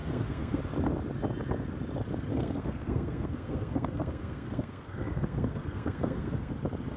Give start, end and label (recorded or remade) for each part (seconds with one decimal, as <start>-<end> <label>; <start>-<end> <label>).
0.0-0.6 remade; 0.6-2.3 recorded; 2.3-6.5 remade; 6.5-7.0 recorded